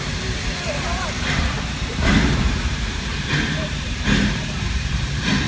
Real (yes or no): no